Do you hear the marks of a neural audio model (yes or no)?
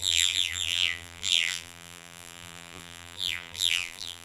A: yes